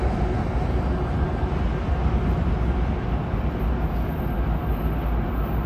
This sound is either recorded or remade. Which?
recorded